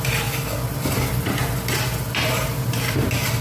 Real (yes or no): yes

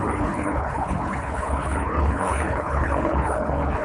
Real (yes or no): no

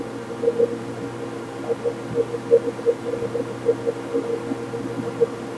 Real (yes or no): yes